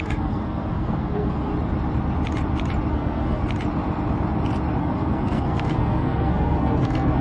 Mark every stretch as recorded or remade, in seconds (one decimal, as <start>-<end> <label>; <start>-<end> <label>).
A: 0.0-1.5 remade; 1.5-2.9 recorded; 2.9-3.4 remade; 3.4-4.8 recorded; 4.8-7.2 remade